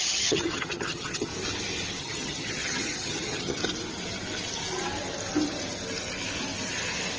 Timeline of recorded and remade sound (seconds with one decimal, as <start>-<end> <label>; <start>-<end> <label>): 0.0-1.3 remade; 1.3-2.0 recorded; 2.0-3.6 remade; 3.6-7.2 recorded